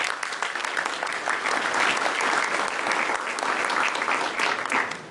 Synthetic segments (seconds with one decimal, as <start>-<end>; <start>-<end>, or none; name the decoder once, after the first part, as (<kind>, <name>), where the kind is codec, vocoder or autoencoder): none